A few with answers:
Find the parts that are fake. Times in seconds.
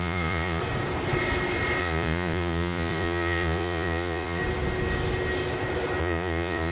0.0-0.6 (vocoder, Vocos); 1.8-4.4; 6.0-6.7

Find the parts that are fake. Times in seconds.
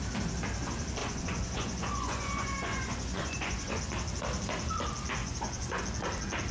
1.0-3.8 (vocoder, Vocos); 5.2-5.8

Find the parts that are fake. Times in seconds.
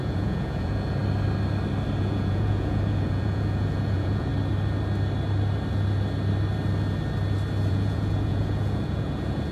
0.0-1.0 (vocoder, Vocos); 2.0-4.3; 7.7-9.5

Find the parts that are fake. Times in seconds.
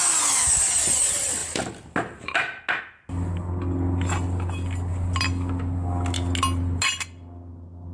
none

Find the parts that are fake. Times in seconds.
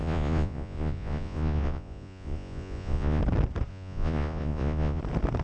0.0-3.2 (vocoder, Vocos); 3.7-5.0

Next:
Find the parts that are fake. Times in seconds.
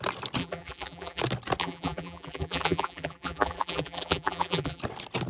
0.4-1.2 (vocoder, BigVGAN v2); 1.6-4.8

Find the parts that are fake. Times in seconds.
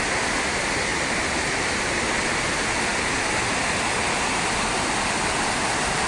0.9-2.0 (vocoder, BigVGAN v2)